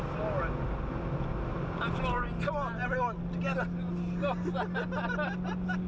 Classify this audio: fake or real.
real